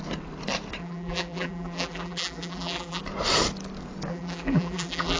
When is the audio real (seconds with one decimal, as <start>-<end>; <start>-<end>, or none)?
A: 0.0-0.8; 3.0-4.1